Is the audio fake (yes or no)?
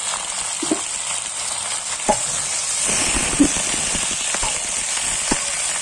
no